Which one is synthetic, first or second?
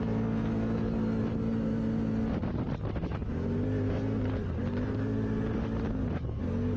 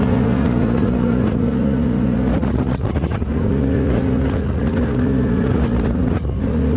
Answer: second